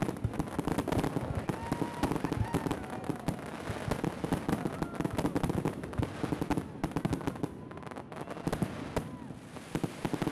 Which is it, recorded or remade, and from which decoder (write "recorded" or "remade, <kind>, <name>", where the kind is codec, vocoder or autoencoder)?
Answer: recorded